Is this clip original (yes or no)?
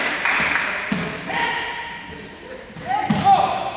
yes